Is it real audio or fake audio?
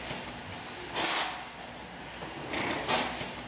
real